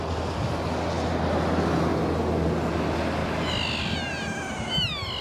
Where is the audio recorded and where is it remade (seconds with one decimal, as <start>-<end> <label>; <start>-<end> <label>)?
0.0-5.2 recorded